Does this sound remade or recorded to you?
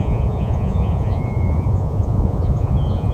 remade